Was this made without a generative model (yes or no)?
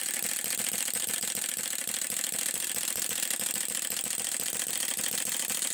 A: yes